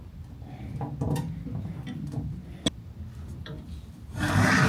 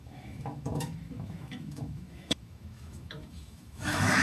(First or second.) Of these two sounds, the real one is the first